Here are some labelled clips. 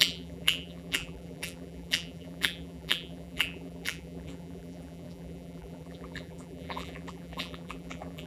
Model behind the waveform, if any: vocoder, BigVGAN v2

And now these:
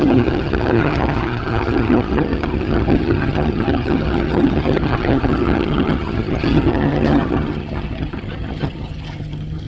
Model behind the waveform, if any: vocoder, HiFi-GAN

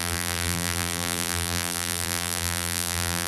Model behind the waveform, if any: vocoder, BigVGAN v2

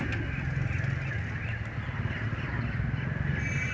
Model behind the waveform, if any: none